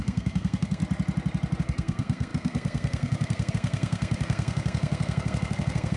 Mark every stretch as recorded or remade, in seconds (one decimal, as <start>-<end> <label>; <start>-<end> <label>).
0.0-0.8 remade; 0.8-1.6 recorded; 1.6-6.0 remade